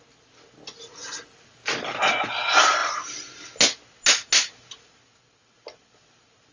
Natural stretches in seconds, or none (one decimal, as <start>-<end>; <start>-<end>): 0.0-6.5